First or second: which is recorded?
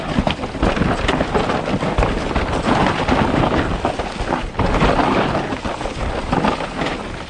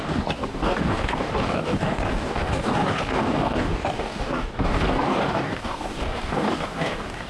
first